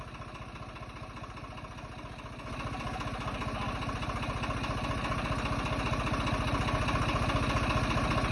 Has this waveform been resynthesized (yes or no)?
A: no